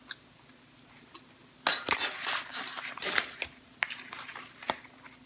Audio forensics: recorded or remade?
recorded